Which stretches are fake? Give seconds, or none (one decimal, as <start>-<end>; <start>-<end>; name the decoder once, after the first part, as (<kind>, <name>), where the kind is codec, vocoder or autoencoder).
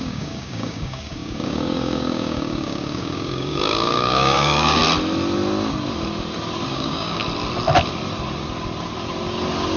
0.0-4.8 (codec, DAC); 6.7-7.2